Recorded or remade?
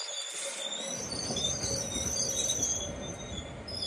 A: recorded